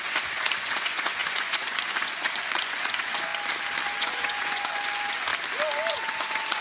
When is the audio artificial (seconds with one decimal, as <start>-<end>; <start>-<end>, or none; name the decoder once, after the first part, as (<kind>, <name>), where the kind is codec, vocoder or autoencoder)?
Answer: 0.0-3.3 (vocoder, Vocos); 4.0-5.3; 5.9-6.6